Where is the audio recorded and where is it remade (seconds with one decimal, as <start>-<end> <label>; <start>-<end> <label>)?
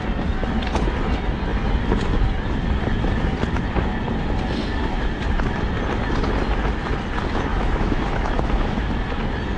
0.0-7.5 recorded; 7.5-8.9 remade; 8.9-9.6 recorded